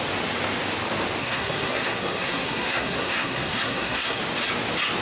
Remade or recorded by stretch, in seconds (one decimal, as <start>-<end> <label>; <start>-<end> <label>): 0.0-1.2 recorded; 1.2-4.2 remade; 4.2-5.0 recorded

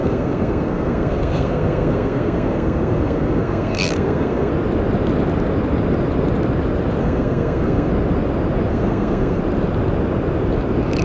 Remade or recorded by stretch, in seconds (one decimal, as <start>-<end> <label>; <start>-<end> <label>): 0.0-4.5 remade; 4.5-7.0 recorded; 7.0-7.9 remade; 7.9-8.7 recorded; 8.7-9.4 remade; 9.4-11.0 recorded